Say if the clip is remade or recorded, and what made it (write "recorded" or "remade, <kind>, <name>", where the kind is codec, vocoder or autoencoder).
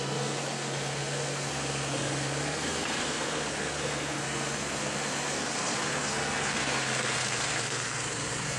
remade, codec, SNAC